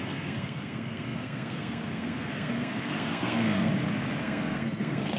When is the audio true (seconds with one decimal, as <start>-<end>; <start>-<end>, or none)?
3.7-4.2

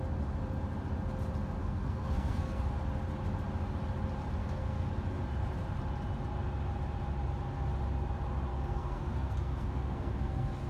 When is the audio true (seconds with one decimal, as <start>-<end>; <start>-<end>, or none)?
0.0-1.6; 2.6-4.4; 4.9-8.5

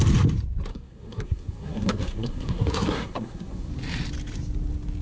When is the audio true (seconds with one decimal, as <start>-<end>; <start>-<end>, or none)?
0.0-0.7; 3.7-5.0

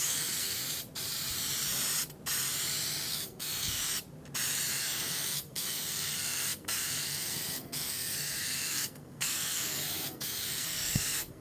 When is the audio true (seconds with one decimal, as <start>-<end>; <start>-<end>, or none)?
0.6-3.1; 3.9-4.7